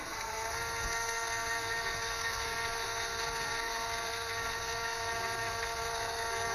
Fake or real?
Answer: fake